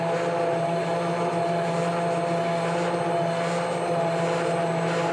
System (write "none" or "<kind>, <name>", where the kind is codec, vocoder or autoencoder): none